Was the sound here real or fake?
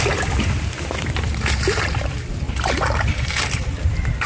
real